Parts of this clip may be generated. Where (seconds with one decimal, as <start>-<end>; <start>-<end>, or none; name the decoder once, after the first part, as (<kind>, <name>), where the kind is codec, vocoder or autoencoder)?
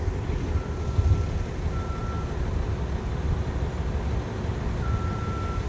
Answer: none